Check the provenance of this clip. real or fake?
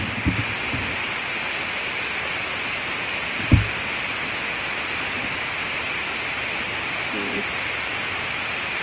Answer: real